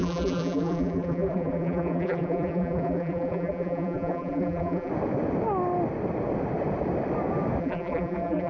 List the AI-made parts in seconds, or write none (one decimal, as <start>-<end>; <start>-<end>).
0.0-4.9; 7.6-8.5